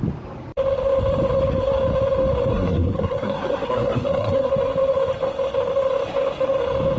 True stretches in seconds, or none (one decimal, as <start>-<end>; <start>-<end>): 0.0-2.5; 4.5-7.0